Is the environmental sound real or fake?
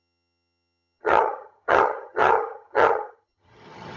fake